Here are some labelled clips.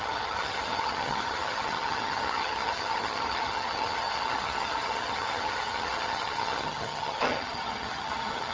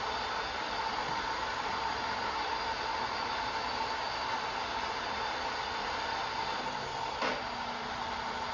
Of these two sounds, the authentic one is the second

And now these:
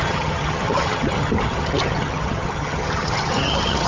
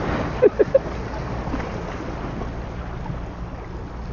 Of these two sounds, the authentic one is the second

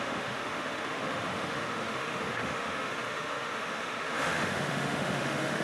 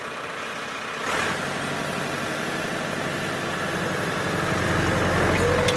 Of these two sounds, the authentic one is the second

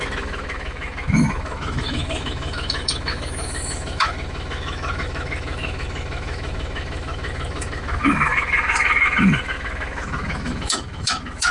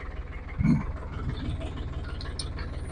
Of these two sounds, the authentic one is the second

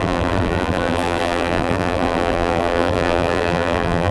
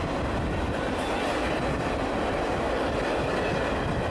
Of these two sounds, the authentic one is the second